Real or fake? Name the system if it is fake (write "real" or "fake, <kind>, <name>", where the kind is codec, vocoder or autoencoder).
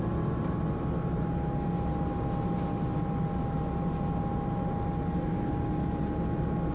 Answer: real